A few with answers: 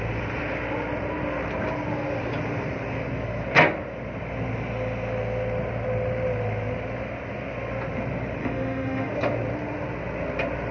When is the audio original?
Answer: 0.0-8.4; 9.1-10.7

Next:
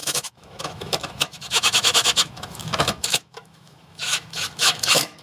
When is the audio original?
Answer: none

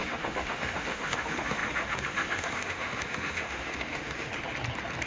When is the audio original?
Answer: 4.3-5.1

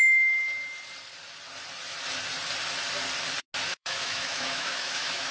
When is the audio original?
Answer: 0.0-3.7